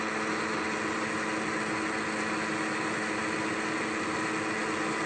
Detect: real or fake real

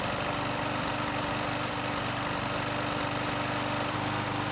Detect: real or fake real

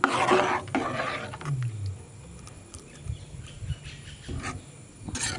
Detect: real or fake real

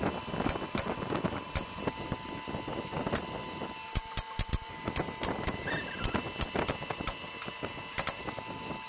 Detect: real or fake real